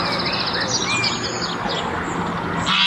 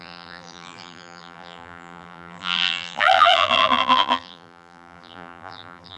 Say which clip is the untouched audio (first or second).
first